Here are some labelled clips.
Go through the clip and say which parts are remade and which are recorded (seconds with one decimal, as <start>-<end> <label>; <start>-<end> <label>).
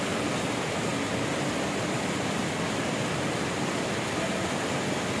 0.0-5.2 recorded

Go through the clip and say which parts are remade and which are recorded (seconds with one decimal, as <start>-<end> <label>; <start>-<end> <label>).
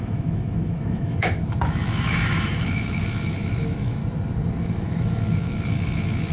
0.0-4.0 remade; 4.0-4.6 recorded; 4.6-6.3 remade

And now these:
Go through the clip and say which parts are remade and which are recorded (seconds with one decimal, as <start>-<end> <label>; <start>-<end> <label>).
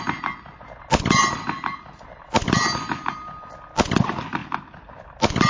0.0-5.5 recorded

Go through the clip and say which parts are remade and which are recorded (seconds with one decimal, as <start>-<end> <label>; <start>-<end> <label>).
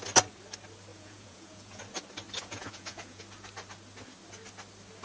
0.0-0.9 recorded; 0.9-1.8 remade; 1.8-2.4 recorded; 2.4-3.2 remade; 3.2-5.0 recorded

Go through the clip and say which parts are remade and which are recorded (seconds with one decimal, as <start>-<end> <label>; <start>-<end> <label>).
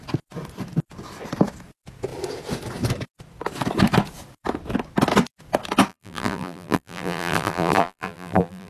0.0-5.9 recorded; 5.9-8.7 remade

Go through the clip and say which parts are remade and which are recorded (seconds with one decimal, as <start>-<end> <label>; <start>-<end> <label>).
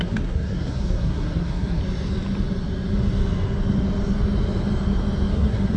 0.0-1.8 remade; 1.8-5.3 recorded; 5.3-5.8 remade